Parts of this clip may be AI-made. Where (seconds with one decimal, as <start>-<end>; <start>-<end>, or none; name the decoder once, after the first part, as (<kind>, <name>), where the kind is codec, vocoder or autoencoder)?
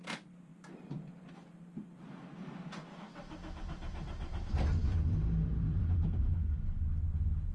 0.5-3.0 (vocoder, BigVGAN v2); 3.8-4.4; 4.9-6.2